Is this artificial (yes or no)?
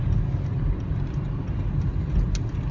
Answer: no